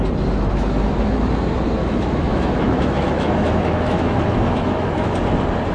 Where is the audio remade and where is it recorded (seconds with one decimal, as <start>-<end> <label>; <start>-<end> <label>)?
0.0-1.8 recorded; 1.8-5.1 remade; 5.1-5.7 recorded